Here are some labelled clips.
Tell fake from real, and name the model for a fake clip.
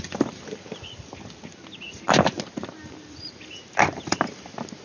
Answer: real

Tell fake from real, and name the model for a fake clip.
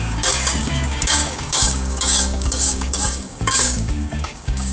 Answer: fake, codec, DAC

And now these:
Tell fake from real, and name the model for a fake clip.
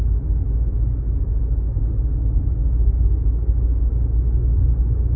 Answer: real